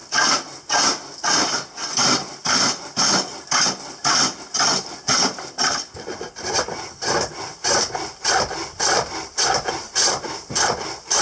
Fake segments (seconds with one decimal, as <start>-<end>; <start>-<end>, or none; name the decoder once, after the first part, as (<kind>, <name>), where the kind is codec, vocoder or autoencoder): none